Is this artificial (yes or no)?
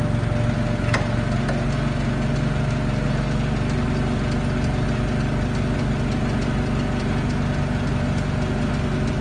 no